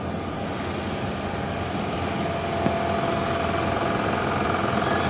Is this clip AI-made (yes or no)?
no